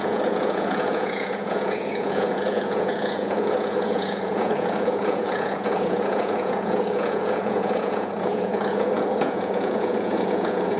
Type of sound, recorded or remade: remade